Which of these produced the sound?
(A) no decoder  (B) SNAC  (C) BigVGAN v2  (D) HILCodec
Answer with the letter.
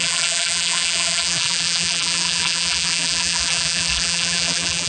C